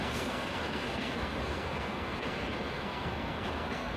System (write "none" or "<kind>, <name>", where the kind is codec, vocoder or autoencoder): codec, SNAC